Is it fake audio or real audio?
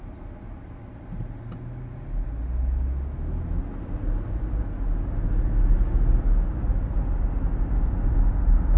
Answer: real